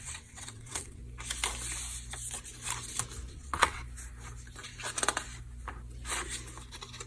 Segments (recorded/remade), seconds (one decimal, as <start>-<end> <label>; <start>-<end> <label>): 0.0-1.0 remade; 1.0-3.3 recorded; 3.3-3.8 remade; 3.8-7.1 recorded

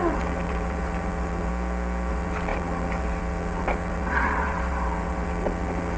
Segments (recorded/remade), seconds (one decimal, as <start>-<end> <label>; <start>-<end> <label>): 0.0-1.5 remade; 1.5-2.1 recorded; 2.1-6.0 remade

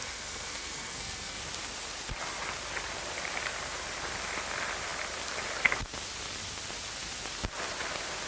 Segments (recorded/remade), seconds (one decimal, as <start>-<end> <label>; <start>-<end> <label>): 0.0-1.4 remade; 1.4-8.3 recorded

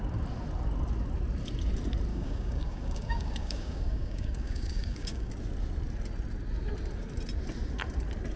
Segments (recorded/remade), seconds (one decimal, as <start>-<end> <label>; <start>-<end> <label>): 0.0-2.1 recorded; 2.1-5.3 remade; 5.3-8.4 recorded

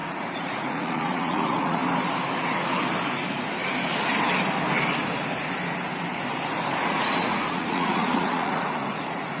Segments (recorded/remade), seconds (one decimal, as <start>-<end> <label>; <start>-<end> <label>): 0.0-1.8 remade; 1.8-6.8 recorded; 6.8-9.4 remade